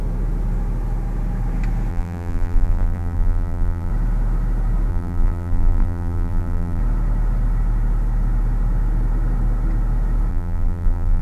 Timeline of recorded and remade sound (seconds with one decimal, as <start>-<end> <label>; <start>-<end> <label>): 0.0-1.9 recorded; 1.9-3.9 remade; 3.9-4.9 recorded; 4.9-6.8 remade; 6.8-10.3 recorded; 10.3-11.2 remade